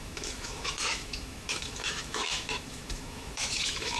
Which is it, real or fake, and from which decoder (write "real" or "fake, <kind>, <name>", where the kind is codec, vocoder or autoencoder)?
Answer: fake, autoencoder, DAC-VAE